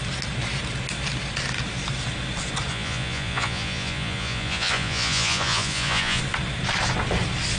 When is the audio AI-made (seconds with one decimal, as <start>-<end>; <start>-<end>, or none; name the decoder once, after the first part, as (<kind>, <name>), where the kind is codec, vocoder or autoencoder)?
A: 2.7-6.2 (vocoder, Vocos)